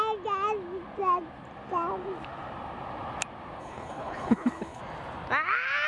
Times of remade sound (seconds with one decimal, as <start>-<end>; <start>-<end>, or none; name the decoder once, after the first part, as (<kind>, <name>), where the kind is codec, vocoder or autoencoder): 3.6-4.8 (codec, HILCodec)